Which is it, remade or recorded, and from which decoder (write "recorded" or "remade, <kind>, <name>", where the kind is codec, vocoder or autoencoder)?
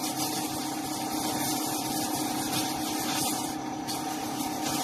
recorded